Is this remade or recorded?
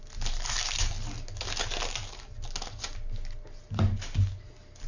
recorded